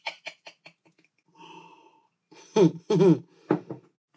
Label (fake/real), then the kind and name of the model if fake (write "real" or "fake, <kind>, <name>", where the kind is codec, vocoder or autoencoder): real